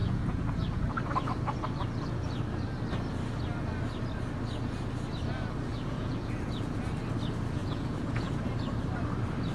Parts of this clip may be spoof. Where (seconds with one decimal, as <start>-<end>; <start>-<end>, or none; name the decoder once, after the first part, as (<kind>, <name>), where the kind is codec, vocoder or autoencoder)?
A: 0.0-0.8 (vocoder, Vocos); 5.7-6.8; 7.6-8.3